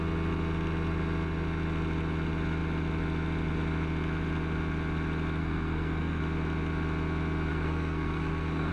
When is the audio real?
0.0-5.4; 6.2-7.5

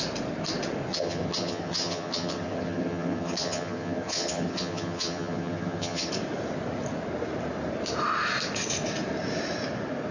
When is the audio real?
0.0-0.9; 6.1-10.1

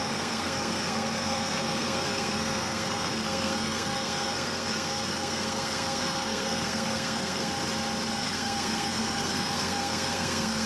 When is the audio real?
7.5-8.1

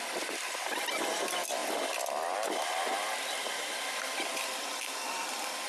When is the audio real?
0.0-5.7

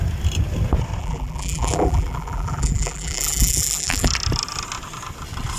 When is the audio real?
0.0-1.0; 4.1-5.6

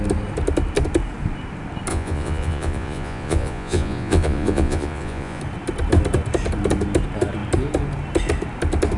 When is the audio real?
0.0-1.9; 5.4-9.0

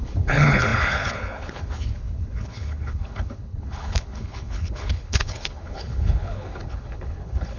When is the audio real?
none